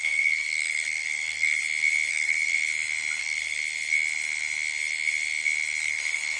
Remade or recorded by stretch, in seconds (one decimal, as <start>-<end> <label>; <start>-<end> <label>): 0.0-1.6 remade; 1.6-2.1 recorded; 2.1-2.5 remade; 2.5-3.2 recorded; 3.2-3.6 remade; 3.6-5.8 recorded; 5.8-6.4 remade